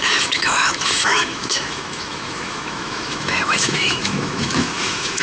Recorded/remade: remade